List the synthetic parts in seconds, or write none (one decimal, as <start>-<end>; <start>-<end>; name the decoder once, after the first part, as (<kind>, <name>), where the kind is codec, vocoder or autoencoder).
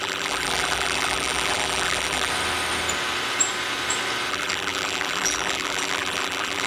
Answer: 0.0-2.3 (vocoder, BigVGAN v2); 4.3-6.7